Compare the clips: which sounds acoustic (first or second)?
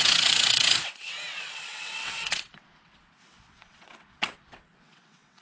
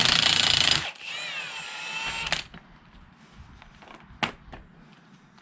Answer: second